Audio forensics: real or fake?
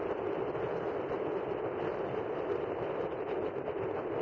real